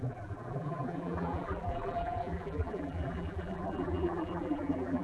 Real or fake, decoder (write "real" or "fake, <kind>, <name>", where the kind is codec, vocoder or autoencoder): fake, vocoder, BigVGAN v2